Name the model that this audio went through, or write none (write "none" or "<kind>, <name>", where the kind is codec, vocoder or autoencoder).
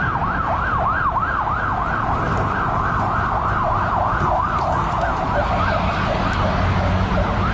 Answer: none